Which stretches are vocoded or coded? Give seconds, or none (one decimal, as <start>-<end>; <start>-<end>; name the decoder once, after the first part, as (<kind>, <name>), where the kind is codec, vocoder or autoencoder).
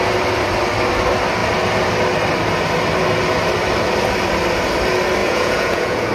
5.2-6.1 (vocoder, Vocos)